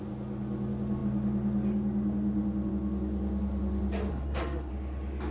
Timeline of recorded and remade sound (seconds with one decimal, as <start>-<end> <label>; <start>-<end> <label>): 0.0-4.1 recorded; 4.1-4.7 remade; 4.7-5.3 recorded